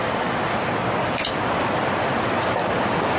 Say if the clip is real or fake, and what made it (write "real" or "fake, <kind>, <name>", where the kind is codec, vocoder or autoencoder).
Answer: real